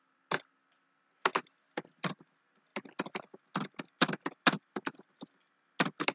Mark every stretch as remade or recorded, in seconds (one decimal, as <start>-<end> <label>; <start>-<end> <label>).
0.0-6.1 recorded